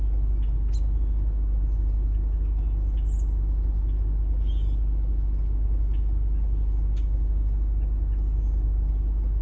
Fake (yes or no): no